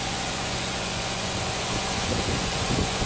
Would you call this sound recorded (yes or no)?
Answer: no